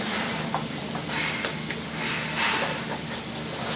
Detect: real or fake real